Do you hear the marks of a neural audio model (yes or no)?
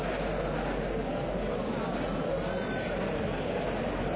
no